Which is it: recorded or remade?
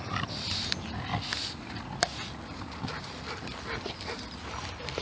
recorded